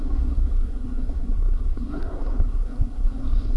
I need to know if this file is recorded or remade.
remade